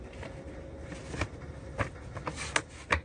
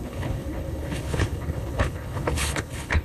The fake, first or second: second